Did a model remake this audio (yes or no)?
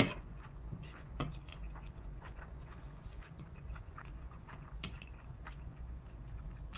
yes